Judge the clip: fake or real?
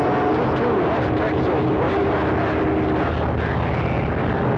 real